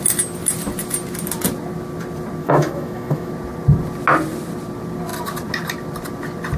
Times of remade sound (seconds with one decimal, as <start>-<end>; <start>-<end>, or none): 2.4-3.3

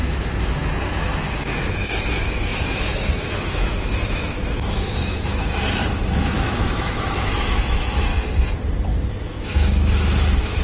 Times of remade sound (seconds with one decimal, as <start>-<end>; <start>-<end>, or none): 0.0-1.5; 2.1-5.3; 5.9-8.1; 9.1-10.6

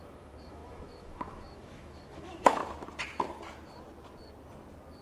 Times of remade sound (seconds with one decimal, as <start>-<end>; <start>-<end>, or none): 0.0-2.6

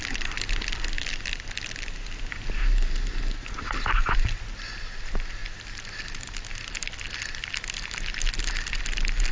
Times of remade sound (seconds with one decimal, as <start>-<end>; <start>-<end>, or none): none

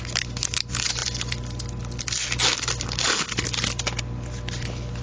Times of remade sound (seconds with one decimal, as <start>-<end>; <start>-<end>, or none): none

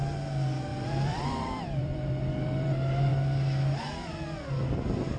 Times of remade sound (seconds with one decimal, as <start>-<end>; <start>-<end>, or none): 0.7-2.7